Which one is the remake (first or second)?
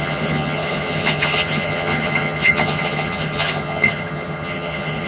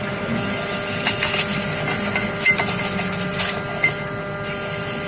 first